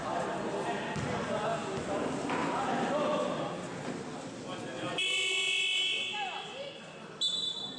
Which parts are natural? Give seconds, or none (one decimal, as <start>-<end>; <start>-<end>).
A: 0.0-7.8